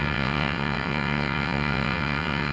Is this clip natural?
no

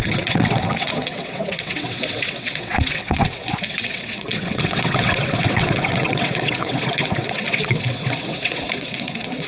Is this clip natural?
no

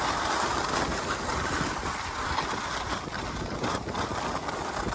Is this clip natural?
yes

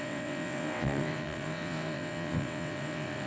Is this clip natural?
no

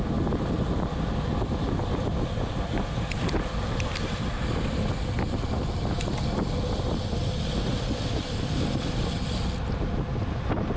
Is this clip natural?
yes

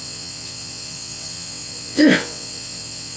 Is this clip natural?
no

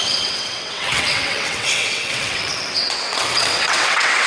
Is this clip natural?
no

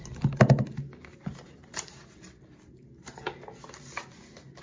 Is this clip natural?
yes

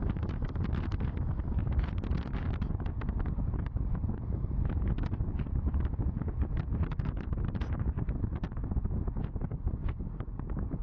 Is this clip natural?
yes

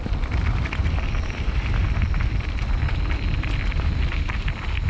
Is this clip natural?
yes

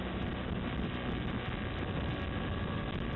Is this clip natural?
yes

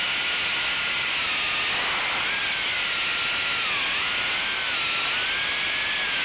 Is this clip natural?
yes